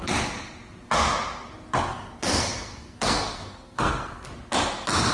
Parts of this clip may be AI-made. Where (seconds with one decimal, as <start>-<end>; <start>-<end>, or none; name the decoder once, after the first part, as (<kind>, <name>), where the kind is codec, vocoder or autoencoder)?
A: 1.9-4.3 (codec, SNAC)

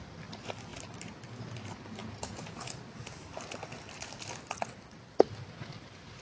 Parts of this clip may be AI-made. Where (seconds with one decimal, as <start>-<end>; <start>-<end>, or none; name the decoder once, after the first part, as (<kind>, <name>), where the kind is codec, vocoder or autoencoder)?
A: 2.0-2.7 (vocoder, Vocos)

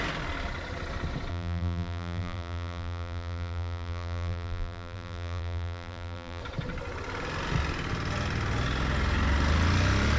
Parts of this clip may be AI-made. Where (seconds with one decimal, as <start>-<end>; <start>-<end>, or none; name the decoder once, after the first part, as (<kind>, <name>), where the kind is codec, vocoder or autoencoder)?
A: 1.3-6.4 (vocoder, BigVGAN v2)

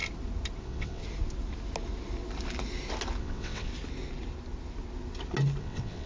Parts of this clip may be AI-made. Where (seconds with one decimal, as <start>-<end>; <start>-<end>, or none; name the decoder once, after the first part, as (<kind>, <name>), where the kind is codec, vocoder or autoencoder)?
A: 0.6-1.0 (vocoder, WaveNeXt); 3.2-3.7; 5.6-6.1

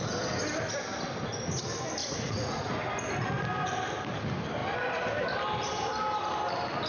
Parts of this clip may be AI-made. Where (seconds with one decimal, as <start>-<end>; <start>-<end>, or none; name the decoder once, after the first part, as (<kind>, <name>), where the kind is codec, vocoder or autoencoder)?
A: 2.0-2.8 (vocoder, Vocos)

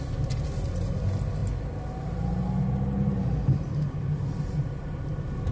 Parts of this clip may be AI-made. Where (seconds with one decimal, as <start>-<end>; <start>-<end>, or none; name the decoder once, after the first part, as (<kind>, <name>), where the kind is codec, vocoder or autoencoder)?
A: none

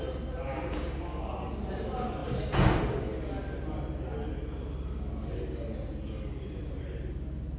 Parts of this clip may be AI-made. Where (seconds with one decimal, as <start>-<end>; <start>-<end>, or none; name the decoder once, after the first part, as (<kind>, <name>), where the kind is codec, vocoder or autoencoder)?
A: 0.5-1.3 (codec, DAC)